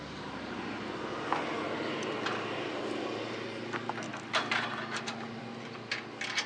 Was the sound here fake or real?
real